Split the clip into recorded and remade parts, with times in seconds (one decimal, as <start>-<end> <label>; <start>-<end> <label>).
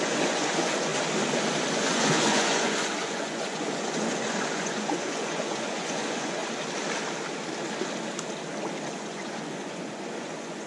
0.0-0.9 remade; 0.9-1.7 recorded; 1.7-6.4 remade; 6.4-8.9 recorded; 8.9-10.7 remade